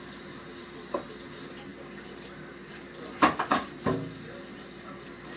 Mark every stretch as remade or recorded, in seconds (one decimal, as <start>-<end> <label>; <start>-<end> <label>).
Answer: 0.0-5.4 recorded